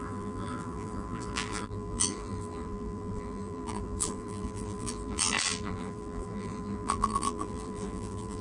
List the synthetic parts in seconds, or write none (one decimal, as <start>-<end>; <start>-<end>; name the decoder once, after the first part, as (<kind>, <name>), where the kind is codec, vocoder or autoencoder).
0.0-8.4 (vocoder, BigVGAN v2)